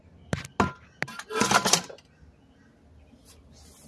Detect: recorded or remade recorded